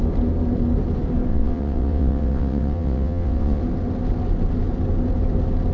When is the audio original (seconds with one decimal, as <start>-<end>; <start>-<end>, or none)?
0.0-1.3; 3.6-5.7